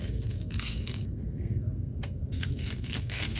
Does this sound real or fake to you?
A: fake